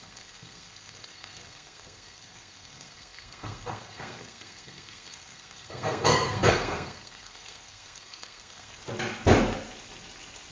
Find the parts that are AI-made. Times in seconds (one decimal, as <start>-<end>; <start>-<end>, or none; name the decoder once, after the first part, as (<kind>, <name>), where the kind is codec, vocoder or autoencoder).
0.0-8.8 (codec, SNAC)